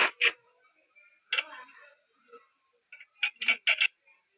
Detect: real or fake real